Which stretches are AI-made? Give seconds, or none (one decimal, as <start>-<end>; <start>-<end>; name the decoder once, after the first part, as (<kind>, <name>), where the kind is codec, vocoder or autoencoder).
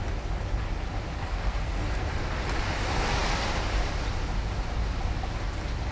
1.2-2.1 (codec, SNAC)